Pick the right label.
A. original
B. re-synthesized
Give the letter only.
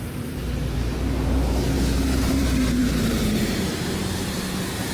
B